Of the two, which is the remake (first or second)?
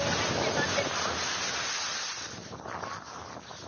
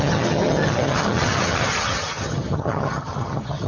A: second